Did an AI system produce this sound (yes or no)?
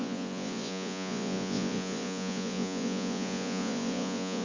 yes